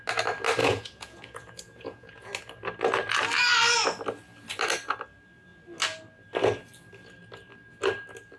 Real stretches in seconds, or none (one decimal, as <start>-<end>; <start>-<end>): 0.0-0.6; 2.3-8.4